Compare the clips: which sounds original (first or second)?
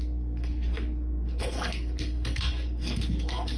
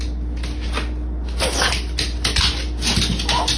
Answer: second